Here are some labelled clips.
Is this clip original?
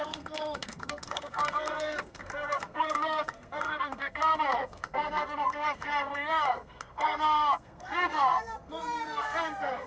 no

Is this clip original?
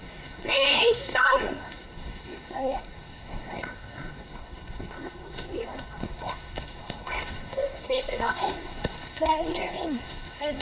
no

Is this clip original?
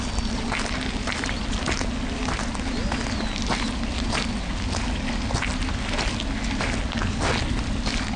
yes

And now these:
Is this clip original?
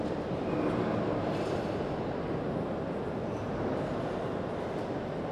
yes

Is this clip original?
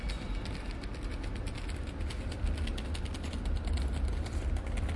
yes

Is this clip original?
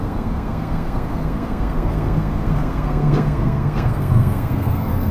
no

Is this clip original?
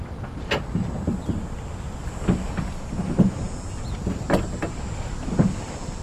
yes